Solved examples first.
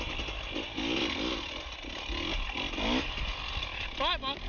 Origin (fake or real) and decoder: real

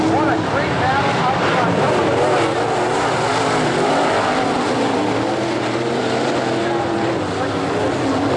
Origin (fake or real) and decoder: real